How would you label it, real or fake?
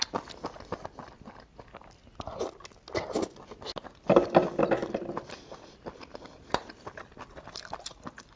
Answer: real